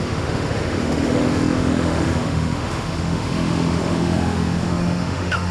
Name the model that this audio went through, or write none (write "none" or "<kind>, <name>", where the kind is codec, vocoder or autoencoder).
autoencoder, DAC-VAE